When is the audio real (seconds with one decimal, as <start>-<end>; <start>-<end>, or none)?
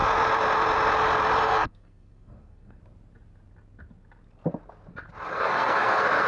0.0-1.4; 2.8-5.3